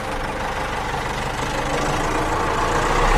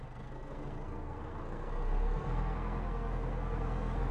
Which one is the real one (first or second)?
first